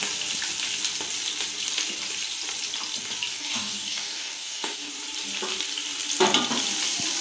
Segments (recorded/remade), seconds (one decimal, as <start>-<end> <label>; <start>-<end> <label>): 0.0-3.3 recorded; 3.3-4.9 remade; 4.9-7.2 recorded

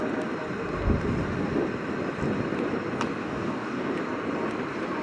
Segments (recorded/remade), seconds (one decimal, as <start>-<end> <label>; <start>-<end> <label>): 0.0-3.2 recorded; 3.2-3.9 remade; 3.9-5.0 recorded

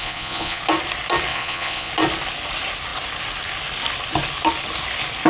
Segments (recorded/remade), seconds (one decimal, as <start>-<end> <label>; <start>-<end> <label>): 0.0-0.6 remade; 0.6-1.3 recorded; 1.3-1.9 remade; 1.9-5.3 recorded

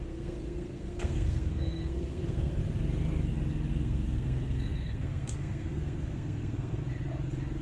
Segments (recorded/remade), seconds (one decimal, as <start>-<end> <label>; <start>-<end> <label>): 0.0-2.6 remade; 2.6-3.7 recorded; 3.7-6.8 remade; 6.8-7.6 recorded

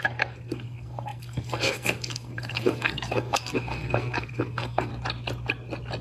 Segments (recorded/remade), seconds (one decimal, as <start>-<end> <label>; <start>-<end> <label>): 0.0-4.9 remade; 4.9-6.0 recorded